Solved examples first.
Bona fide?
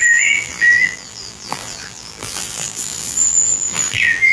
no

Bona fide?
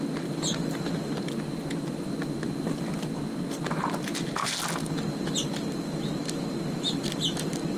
yes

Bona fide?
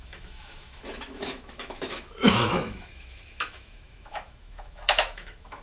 no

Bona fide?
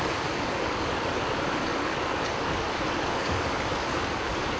no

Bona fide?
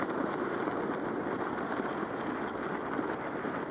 yes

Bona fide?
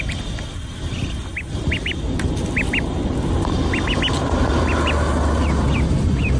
yes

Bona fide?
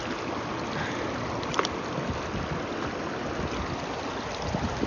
yes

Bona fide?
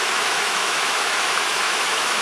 no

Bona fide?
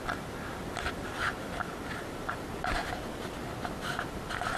yes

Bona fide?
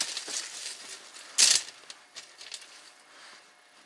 yes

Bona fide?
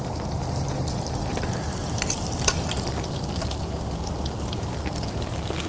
yes